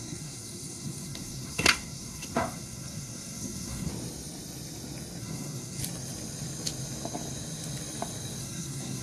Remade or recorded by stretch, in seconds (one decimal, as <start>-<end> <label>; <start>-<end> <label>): 0.0-3.9 remade; 3.9-5.2 recorded; 5.2-5.8 remade; 5.8-8.4 recorded; 8.4-9.0 remade